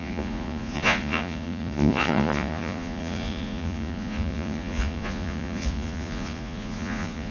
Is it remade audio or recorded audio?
remade